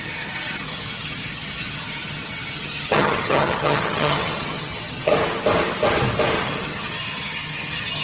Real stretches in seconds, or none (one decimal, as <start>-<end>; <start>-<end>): 5.1-6.4